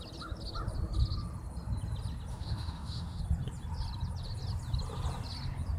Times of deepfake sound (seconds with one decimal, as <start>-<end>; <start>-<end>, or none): 2.3-3.2